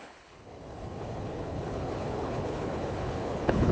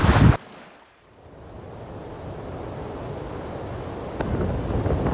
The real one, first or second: second